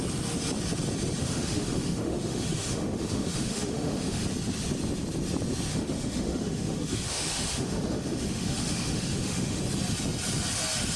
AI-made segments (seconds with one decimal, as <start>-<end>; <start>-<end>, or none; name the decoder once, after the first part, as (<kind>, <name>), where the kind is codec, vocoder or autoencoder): 1.2-4.2 (autoencoder, DAC-VAE); 5.7-9.6